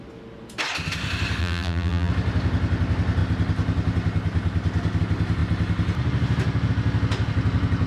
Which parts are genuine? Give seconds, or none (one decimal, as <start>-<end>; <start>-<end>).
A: 0.0-1.4; 2.1-7.9